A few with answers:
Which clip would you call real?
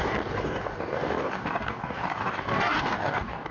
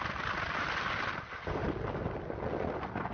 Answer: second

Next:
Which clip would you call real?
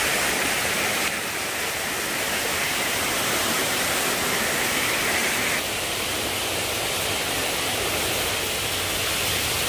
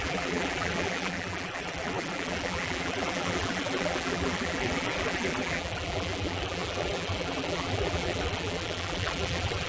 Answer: first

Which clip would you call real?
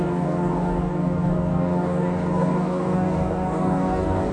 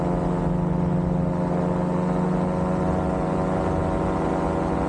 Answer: second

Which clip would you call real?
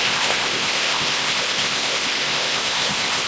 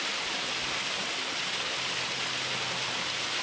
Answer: second